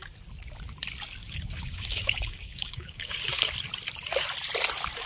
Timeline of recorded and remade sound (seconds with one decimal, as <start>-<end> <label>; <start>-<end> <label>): 0.0-1.2 recorded; 1.2-3.5 remade; 3.5-5.1 recorded